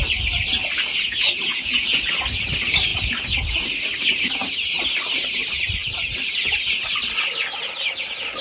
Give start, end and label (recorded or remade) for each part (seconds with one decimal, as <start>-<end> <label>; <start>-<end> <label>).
0.0-1.5 recorded; 1.5-2.0 remade; 2.0-8.4 recorded